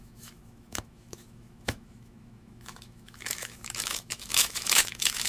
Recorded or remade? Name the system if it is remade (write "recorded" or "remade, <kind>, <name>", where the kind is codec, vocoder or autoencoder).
remade, autoencoder, DAC-VAE